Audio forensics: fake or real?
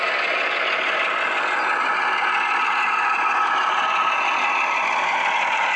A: real